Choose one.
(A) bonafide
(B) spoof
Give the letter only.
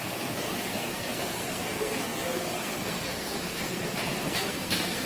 B